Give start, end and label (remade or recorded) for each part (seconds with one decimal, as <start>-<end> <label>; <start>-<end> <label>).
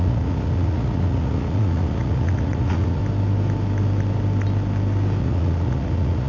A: 0.0-3.0 remade; 3.0-5.2 recorded; 5.2-6.3 remade